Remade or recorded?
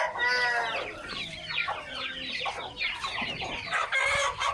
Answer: recorded